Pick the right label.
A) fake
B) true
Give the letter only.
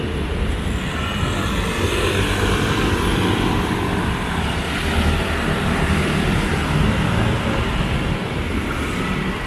B